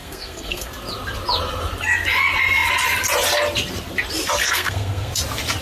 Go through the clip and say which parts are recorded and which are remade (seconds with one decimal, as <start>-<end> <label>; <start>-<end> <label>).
0.0-0.7 remade; 0.7-4.4 recorded; 4.4-5.1 remade; 5.1-5.6 recorded